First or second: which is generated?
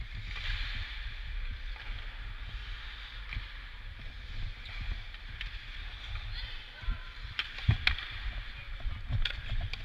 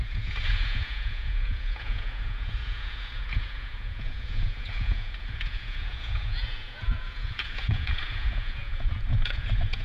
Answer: second